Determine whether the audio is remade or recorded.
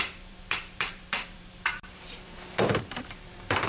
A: remade